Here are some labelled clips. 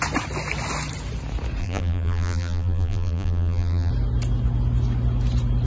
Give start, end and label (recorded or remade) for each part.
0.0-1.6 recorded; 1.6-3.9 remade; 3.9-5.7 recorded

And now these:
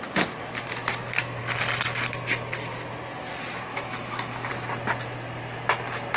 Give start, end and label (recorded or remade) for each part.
0.0-3.7 recorded; 3.7-4.5 remade; 4.5-6.2 recorded

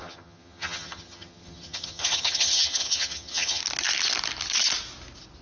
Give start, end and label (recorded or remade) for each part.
0.0-3.6 remade; 3.6-5.4 recorded

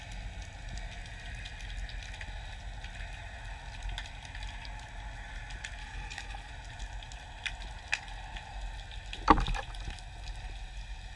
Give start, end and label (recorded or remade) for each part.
0.0-5.8 recorded; 5.8-6.5 remade; 6.5-11.2 recorded

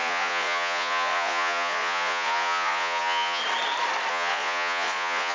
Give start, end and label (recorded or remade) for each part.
0.0-3.4 remade; 3.4-4.1 recorded; 4.1-5.3 remade